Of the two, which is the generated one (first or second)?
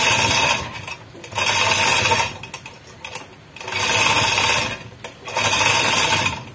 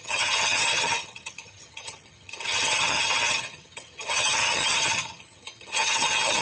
second